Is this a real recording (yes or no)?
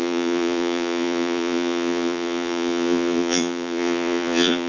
no